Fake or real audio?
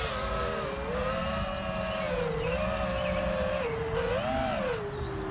real